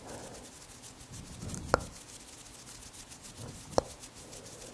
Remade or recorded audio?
recorded